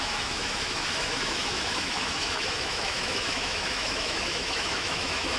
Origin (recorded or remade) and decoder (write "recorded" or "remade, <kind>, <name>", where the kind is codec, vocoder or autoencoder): remade, autoencoder, DAC-VAE